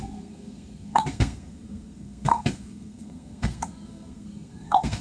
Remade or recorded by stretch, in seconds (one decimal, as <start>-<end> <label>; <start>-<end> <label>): 0.0-5.0 remade